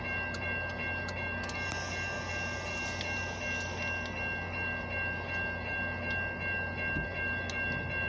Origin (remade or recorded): recorded